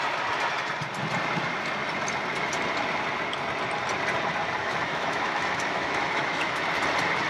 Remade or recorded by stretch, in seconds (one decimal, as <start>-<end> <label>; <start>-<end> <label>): 0.0-4.6 recorded; 4.6-6.6 remade; 6.6-7.3 recorded